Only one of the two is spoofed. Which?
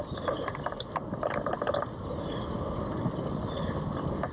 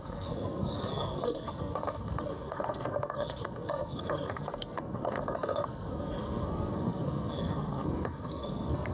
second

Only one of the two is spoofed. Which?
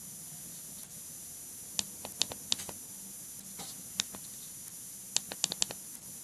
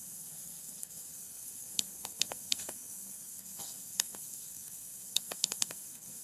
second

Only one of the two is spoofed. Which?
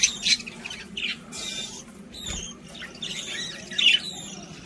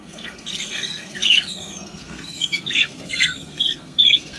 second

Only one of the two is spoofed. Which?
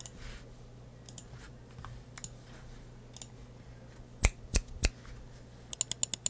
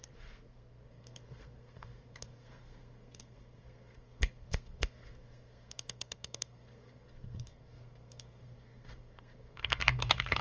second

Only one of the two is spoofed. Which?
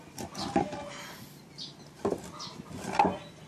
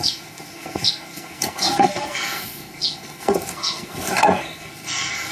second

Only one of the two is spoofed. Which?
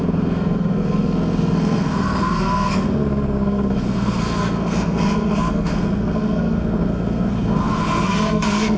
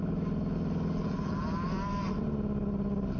first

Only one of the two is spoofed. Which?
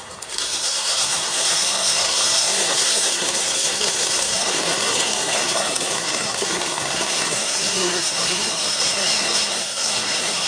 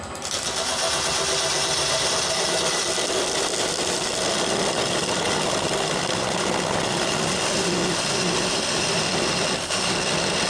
first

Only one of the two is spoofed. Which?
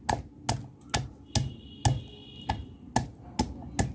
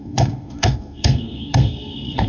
second